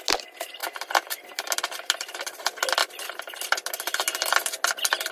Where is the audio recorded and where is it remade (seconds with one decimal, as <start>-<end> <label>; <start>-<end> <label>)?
0.0-0.6 recorded; 0.6-1.5 remade; 1.5-5.1 recorded